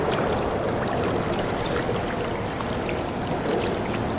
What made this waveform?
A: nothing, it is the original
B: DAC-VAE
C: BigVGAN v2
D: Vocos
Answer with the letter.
A